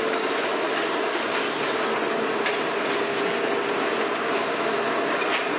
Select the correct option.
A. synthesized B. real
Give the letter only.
B